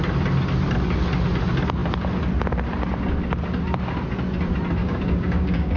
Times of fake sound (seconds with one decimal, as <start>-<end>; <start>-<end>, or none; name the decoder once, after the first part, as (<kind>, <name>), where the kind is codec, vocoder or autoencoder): 4.8-5.8 (codec, DAC)